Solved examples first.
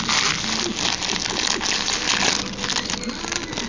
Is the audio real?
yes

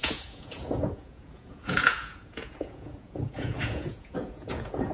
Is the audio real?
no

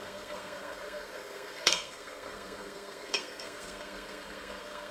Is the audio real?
no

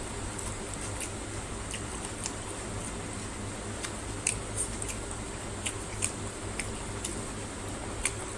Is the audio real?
yes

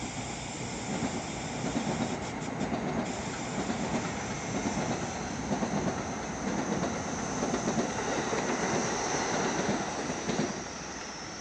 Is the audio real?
yes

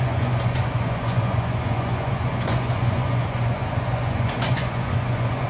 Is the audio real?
no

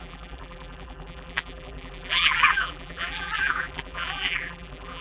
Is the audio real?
no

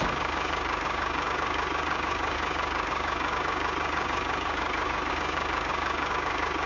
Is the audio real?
no